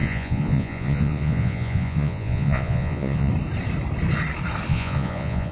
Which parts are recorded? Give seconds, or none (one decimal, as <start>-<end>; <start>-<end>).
3.3-4.7